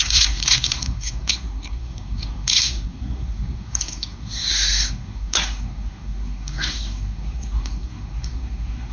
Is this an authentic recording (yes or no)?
no